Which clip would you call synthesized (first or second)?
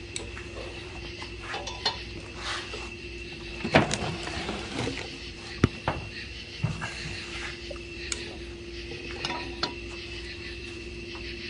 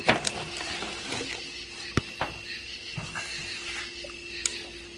first